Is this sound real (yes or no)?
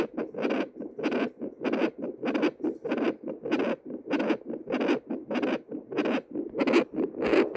yes